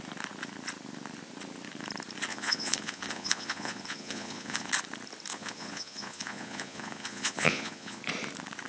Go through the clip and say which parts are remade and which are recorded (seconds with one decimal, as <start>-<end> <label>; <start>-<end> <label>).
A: 0.0-2.3 recorded; 2.3-4.7 remade; 4.7-5.3 recorded; 5.3-8.0 remade; 8.0-8.7 recorded